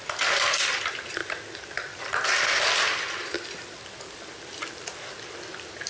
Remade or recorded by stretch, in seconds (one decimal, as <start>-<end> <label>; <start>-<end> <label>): 0.0-5.9 recorded